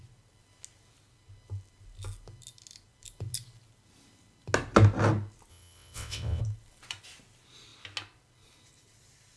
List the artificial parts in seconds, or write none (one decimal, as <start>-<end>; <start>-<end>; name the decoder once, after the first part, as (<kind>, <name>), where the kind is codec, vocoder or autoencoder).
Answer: 5.5-6.4 (vocoder, WaveNeXt)